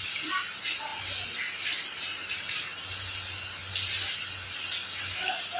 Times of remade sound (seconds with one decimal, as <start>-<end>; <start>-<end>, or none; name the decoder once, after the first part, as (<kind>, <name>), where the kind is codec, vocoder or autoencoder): none